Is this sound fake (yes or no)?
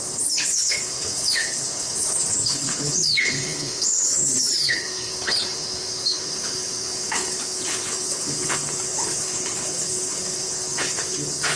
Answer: yes